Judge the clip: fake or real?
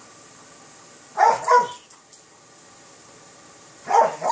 real